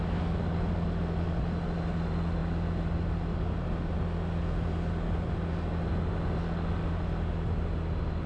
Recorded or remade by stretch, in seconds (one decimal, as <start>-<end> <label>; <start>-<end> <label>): 0.0-8.3 recorded